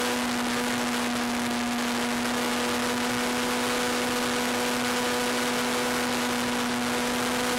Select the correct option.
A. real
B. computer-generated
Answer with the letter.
A